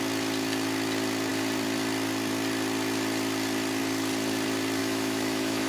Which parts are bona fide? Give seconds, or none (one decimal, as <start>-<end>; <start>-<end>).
0.0-4.8